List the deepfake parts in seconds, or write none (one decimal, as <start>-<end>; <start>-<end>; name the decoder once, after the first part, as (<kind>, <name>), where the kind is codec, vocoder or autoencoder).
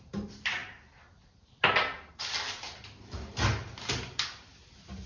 none